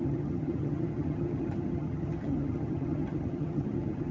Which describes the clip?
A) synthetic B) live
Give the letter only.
A